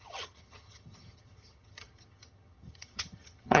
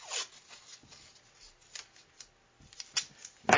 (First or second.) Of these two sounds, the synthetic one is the first